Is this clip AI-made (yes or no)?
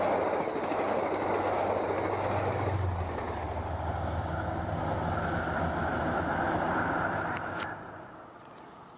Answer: no